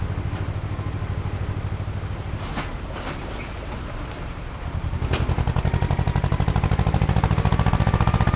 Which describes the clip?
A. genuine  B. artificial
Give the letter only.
A